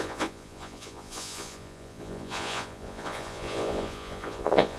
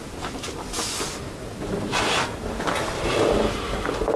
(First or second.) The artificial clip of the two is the first